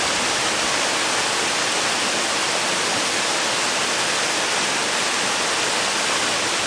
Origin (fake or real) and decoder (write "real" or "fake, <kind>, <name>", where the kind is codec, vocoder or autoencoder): real